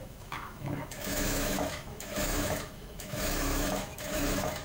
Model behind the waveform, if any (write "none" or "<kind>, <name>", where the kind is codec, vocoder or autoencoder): autoencoder, DAC-VAE